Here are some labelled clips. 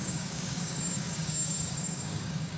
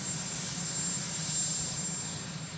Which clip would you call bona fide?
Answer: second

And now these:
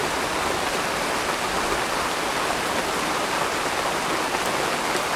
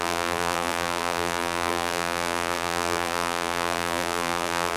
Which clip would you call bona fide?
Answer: first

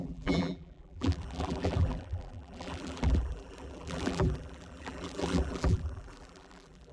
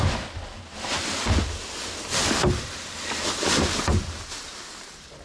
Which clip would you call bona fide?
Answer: second